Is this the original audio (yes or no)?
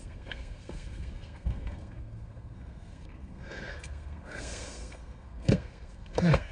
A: no